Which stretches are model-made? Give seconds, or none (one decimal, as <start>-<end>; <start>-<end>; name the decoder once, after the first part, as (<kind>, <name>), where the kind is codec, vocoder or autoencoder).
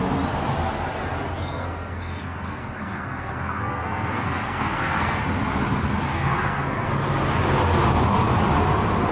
1.3-5.2 (codec, SNAC); 6.1-6.9